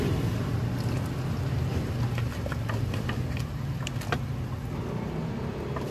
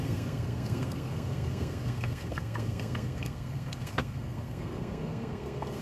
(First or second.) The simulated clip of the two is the second